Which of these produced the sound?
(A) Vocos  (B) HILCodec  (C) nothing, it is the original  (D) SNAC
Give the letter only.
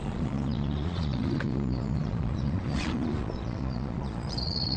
A